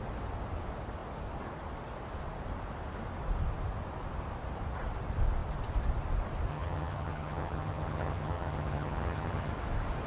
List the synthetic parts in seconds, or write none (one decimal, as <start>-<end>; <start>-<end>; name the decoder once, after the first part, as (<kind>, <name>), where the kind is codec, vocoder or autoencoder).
6.5-9.5 (vocoder, HiFi-GAN)